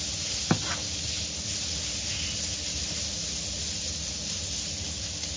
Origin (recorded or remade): recorded